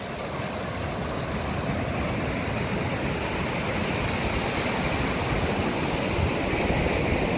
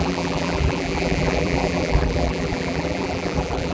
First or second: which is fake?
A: second